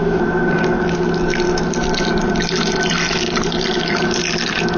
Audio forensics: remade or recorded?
recorded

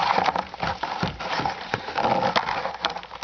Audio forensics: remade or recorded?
recorded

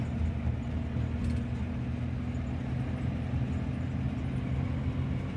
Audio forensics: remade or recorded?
recorded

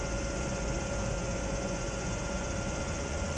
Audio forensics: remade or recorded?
remade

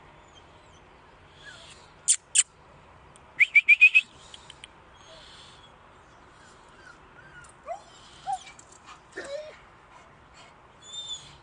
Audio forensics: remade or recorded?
recorded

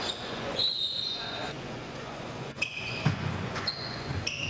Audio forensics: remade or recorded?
remade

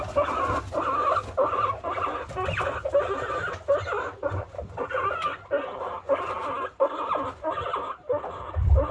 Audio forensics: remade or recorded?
recorded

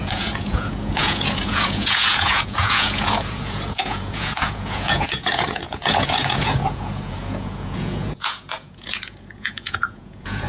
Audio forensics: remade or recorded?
remade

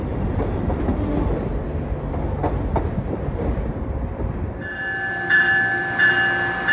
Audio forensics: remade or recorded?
recorded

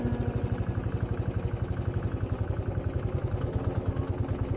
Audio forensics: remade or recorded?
recorded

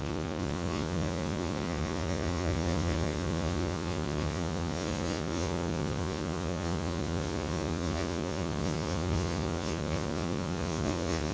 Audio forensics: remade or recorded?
remade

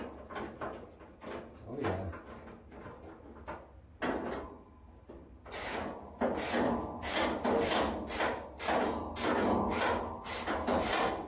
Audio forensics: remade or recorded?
recorded